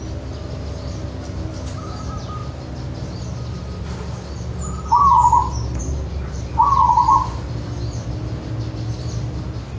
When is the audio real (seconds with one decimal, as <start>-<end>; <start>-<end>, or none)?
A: 0.0-9.8